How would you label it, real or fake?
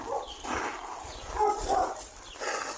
real